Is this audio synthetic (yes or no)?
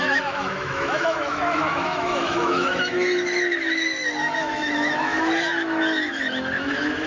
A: yes